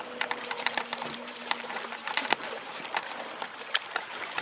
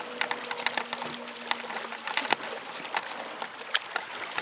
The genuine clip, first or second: second